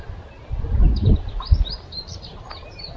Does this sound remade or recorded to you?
recorded